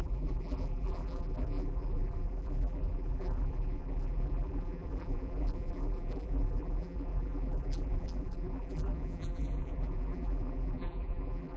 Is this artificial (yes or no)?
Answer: yes